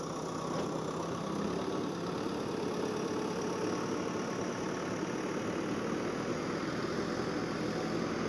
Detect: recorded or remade recorded